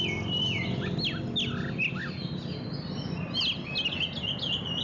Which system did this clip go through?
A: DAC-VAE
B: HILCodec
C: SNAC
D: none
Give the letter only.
D